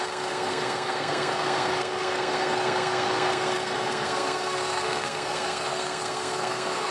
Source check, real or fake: fake